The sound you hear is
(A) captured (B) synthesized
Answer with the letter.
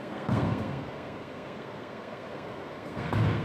B